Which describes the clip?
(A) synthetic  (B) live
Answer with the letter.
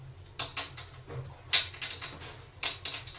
B